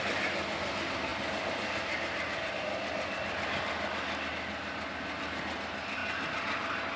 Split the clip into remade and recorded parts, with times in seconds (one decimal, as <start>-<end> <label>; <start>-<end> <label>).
0.0-7.0 recorded